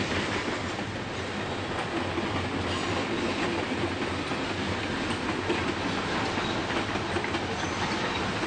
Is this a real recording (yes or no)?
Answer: yes